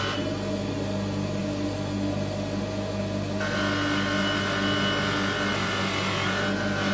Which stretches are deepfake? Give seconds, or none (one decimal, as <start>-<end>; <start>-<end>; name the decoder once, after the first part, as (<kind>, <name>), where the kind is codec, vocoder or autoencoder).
none